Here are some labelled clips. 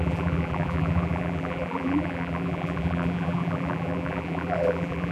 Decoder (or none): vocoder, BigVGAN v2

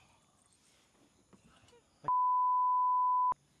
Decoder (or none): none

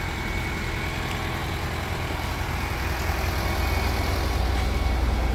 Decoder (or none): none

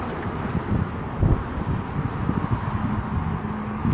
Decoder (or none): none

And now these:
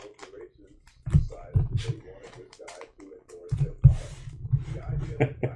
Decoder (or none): vocoder, BigVGAN v2